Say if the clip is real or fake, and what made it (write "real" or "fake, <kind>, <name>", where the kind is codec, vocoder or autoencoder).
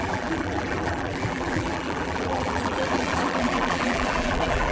fake, vocoder, BigVGAN v2